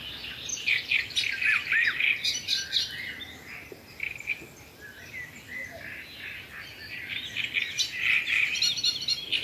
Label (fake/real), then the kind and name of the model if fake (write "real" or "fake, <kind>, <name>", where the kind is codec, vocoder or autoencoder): real